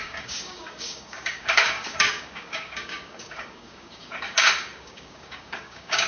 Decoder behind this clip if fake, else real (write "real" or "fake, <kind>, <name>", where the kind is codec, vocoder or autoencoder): fake, codec, DAC